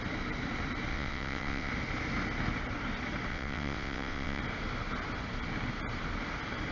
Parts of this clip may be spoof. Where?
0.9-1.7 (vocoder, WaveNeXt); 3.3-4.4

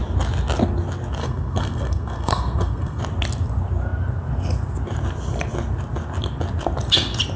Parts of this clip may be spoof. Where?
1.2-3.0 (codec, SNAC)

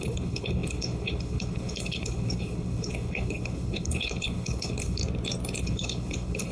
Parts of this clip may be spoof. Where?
0.0-5.0 (codec, HILCodec); 5.6-6.5

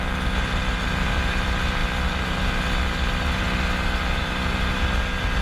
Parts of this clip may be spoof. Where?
none